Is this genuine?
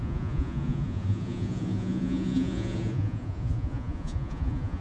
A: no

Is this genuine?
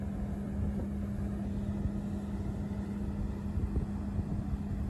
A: yes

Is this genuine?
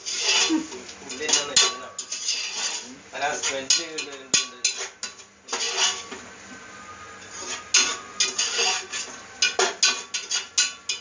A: yes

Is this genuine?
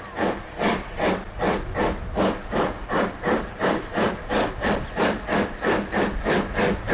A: yes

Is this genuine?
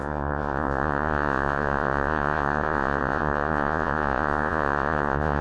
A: no